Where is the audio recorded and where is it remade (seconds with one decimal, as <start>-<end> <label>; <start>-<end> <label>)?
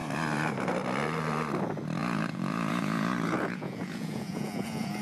0.0-2.0 recorded; 2.0-5.0 remade